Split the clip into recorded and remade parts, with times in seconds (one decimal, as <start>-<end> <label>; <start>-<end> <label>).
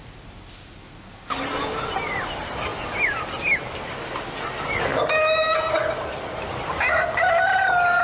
0.0-8.0 recorded